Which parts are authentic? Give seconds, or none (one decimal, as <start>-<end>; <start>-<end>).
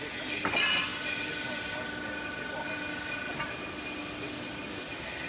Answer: 0.0-5.3